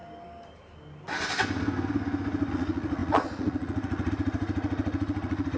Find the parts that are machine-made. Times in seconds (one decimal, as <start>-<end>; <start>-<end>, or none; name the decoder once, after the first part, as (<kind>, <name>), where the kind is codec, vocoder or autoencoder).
2.5-5.6 (vocoder, Vocos)